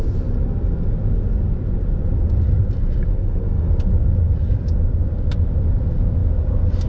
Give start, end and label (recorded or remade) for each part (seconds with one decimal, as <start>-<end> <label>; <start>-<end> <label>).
0.0-3.1 recorded; 3.1-3.7 remade; 3.7-6.9 recorded

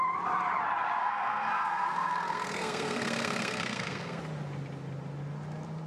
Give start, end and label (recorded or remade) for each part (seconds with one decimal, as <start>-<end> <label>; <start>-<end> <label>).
0.0-1.0 recorded; 1.0-4.2 remade; 4.2-5.9 recorded

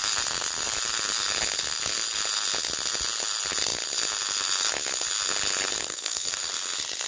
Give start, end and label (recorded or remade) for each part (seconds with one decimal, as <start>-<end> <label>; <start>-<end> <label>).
0.0-5.8 recorded; 5.8-6.5 remade; 6.5-7.1 recorded

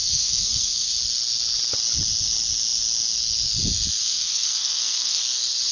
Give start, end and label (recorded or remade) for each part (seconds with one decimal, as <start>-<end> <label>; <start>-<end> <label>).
0.0-0.9 remade; 0.9-4.0 recorded; 4.0-5.2 remade; 5.2-5.7 recorded

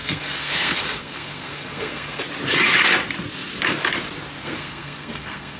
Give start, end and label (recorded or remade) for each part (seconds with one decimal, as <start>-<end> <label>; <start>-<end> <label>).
0.0-2.2 remade; 2.2-4.4 recorded; 4.4-5.6 remade